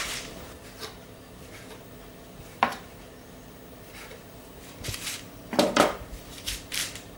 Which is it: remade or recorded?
remade